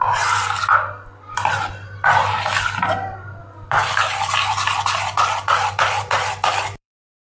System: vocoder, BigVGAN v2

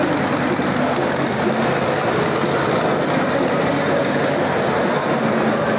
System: none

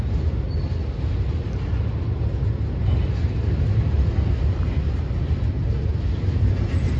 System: none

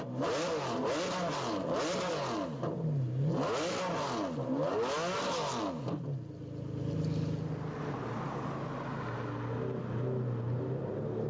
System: none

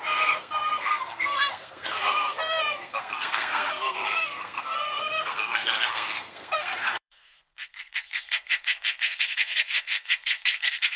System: codec, SNAC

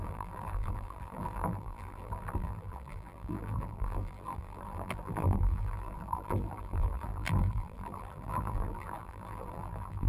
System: vocoder, BigVGAN v2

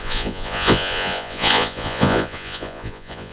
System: vocoder, Vocos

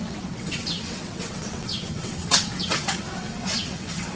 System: vocoder, WaveNeXt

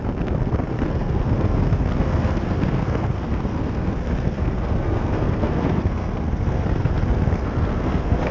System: codec, SNAC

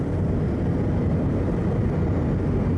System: none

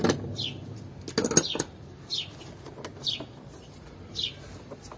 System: none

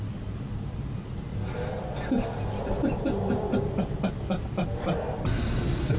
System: none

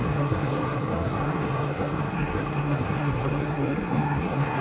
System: codec, SNAC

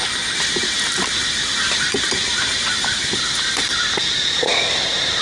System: none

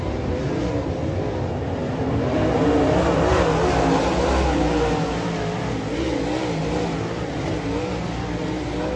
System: none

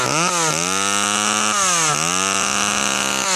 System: none